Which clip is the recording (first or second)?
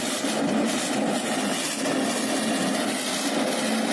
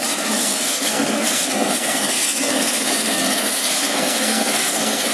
first